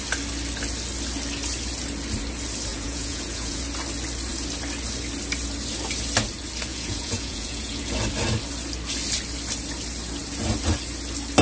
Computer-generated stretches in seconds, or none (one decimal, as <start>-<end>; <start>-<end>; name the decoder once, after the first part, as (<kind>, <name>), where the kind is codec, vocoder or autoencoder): 2.7-3.6 (vocoder, Vocos); 6.7-7.8

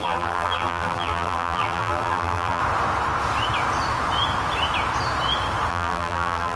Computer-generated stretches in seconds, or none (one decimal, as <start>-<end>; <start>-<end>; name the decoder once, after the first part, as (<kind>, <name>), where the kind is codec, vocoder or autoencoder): 0.0-2.6 (vocoder, BigVGAN v2); 5.7-6.6

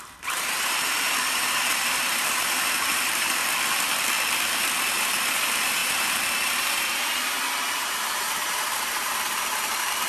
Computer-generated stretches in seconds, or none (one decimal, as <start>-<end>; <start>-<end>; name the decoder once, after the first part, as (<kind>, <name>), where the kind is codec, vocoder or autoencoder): 0.0-3.4 (vocoder, BigVGAN v2); 4.8-10.1

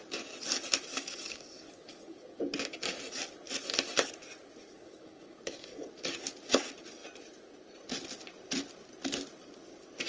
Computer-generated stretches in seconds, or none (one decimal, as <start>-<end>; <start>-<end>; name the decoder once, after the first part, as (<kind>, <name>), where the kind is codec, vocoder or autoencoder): 0.9-2.4 (codec, DAC); 4.7-5.9

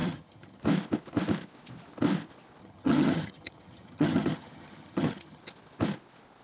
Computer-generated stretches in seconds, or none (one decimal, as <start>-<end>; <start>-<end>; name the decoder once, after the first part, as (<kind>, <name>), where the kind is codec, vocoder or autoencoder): 0.0-0.6 (vocoder, HiFi-GAN); 2.6-5.4